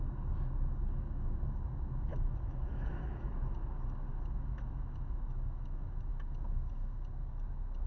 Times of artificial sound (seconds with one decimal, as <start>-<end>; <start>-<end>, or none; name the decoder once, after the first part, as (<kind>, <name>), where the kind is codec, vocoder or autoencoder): 2.1-3.3 (autoencoder, DAC-VAE); 4.1-6.1

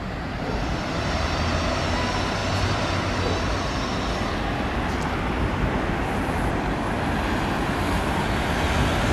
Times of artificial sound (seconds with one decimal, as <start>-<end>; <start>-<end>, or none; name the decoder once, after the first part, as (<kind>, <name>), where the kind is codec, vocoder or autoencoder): none

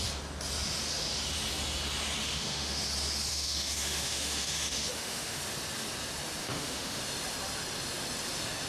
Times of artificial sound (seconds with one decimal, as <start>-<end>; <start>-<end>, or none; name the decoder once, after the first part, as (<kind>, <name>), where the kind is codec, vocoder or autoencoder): 2.2-2.8 (autoencoder, DAC-VAE); 3.3-5.4; 6.4-7.0

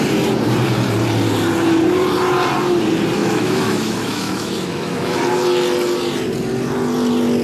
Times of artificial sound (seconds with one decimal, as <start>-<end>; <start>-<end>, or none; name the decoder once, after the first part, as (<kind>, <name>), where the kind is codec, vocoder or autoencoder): 3.2-5.2 (autoencoder, DAC-VAE)